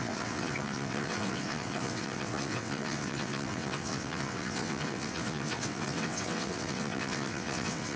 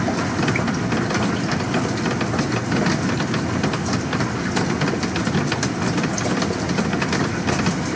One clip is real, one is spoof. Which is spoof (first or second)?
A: first